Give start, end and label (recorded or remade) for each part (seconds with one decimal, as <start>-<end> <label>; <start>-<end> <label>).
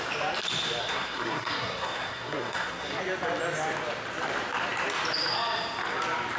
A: 0.0-0.8 recorded; 0.8-3.0 remade; 3.0-6.4 recorded